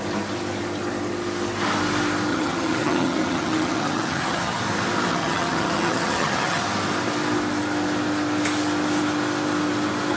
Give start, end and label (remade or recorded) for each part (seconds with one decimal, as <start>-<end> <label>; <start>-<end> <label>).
0.0-2.3 recorded; 2.3-4.6 remade; 4.6-5.1 recorded; 5.1-6.6 remade; 6.6-10.2 recorded